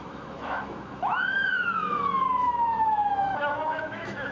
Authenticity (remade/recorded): remade